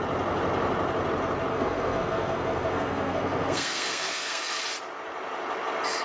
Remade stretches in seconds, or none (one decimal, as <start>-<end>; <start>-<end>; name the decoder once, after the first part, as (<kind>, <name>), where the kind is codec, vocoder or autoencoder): 1.5-4.6 (codec, SNAC)

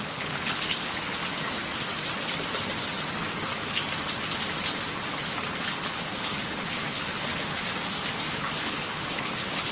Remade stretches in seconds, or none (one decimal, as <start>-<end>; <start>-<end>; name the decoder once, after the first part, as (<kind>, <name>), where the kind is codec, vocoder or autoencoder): 0.0-1.2 (codec, HILCodec); 5.6-7.4; 8.3-9.7

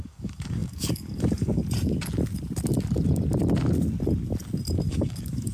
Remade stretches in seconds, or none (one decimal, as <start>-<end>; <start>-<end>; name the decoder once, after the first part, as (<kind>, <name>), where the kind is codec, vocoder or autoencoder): 0.0-1.6 (codec, DAC); 4.9-5.5

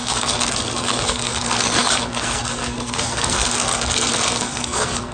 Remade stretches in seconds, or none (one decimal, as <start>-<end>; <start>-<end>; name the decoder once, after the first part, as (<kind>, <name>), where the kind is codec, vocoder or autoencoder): 0.0-5.1 (codec, SNAC)

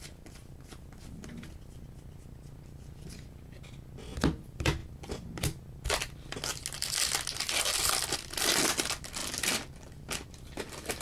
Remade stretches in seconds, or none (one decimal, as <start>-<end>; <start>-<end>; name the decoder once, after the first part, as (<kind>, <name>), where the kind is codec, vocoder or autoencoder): none

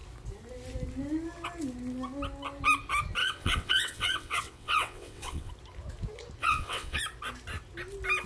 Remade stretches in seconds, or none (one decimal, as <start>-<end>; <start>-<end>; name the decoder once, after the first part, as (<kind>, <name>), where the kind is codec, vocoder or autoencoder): 3.2-5.5 (vocoder, WaveNeXt); 6.4-7.0

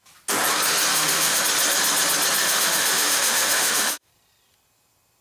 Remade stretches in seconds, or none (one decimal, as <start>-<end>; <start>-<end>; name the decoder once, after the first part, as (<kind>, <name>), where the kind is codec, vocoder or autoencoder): 0.9-1.4 (autoencoder, DAC-VAE); 2.4-4.1

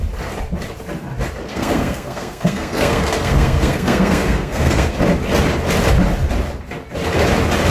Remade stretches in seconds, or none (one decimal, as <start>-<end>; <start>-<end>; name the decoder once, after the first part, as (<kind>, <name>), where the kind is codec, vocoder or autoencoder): 1.5-5.0 (codec, SNAC)